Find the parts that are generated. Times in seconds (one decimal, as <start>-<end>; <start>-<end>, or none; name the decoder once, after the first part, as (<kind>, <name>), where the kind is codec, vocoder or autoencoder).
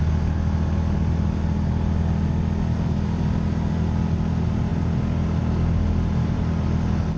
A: none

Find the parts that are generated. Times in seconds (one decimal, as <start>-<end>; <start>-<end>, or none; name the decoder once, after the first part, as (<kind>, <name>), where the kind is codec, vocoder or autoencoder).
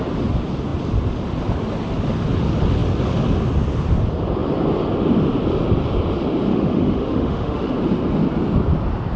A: 6.5-7.7 (autoencoder, DAC-VAE)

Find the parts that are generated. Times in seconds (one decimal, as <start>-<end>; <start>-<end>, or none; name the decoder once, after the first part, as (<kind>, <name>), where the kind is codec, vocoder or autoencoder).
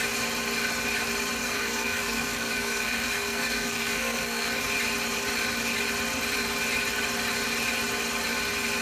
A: 1.4-4.6 (codec, SNAC)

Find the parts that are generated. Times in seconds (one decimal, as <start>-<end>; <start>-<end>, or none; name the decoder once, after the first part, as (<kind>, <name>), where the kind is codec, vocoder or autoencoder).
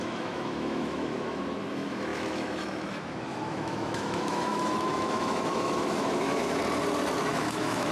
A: 0.0-6.6 (autoencoder, DAC-VAE); 7.3-7.9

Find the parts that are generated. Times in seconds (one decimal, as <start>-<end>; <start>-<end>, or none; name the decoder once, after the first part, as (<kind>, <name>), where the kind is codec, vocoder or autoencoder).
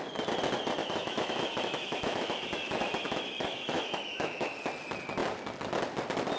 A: 0.8-4.6 (autoencoder, DAC-VAE)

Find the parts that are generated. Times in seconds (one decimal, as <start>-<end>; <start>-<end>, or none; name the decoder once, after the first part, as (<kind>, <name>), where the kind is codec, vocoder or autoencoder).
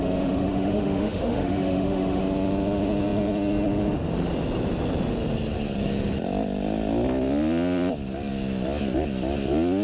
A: 0.0-2.2 (autoencoder, DAC-VAE)